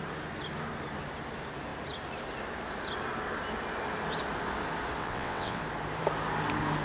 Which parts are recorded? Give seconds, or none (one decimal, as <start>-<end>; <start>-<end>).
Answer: 0.0-5.0; 5.6-6.8